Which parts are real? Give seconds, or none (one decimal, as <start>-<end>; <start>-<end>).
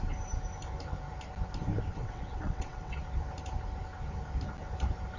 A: 0.0-1.9; 3.0-5.2